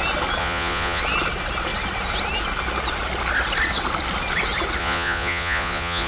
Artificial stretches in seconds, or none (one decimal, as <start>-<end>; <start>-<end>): 0.4-1.0; 4.8-6.1